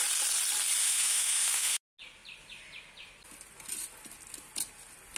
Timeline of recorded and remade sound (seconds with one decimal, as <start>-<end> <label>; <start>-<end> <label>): 0.0-0.8 recorded; 0.8-1.8 remade; 1.8-5.2 recorded